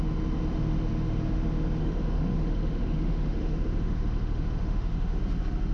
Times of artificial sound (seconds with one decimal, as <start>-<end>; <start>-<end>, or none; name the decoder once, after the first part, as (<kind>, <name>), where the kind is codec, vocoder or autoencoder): 1.8-5.2 (autoencoder, DAC-VAE)